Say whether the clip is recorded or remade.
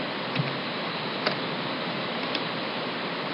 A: recorded